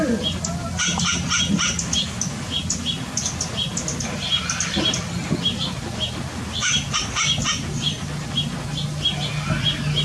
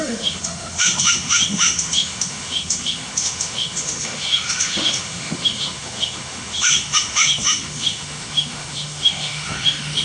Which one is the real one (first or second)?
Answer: first